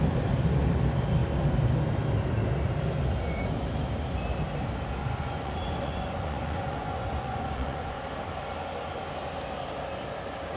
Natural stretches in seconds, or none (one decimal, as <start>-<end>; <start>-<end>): 0.0-5.0; 8.0-10.6